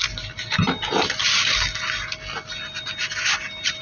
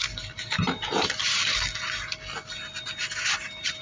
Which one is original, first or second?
first